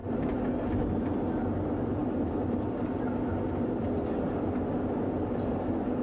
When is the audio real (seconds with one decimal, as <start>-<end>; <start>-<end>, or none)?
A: 0.0-6.0